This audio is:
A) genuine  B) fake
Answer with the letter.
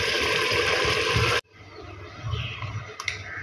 B